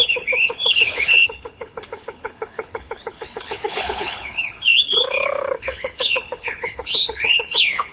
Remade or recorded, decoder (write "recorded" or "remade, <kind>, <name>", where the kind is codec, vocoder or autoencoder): remade, codec, HILCodec